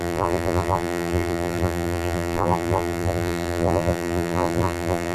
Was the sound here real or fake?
fake